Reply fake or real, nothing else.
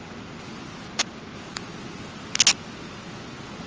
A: real